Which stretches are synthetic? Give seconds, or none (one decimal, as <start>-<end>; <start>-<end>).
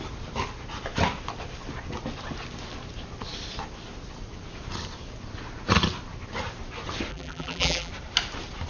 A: 7.1-7.9